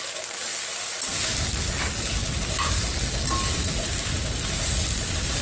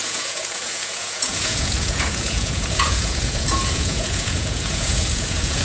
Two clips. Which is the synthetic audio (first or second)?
second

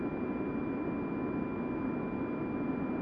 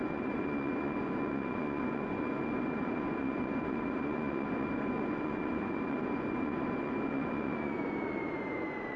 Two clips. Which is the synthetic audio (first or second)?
second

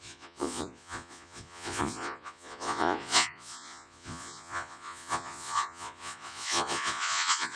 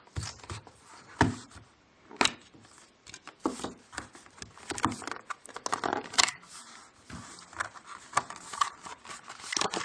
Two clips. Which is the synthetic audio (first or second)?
first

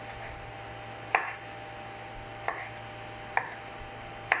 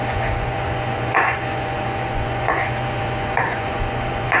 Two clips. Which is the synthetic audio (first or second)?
second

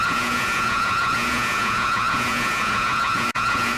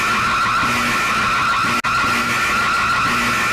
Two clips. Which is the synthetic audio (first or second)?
first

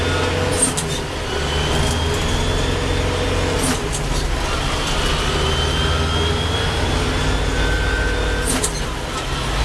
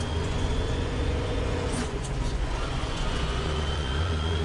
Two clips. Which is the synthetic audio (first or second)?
second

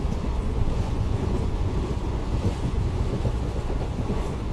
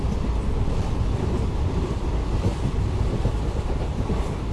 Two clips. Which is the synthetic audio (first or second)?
first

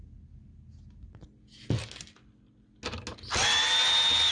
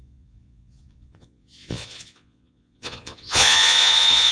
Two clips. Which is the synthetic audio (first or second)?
second